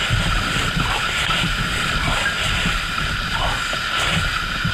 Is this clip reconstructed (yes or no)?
no